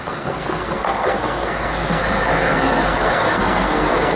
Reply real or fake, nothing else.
fake